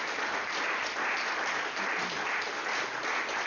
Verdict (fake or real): real